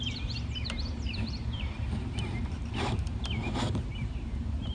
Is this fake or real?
fake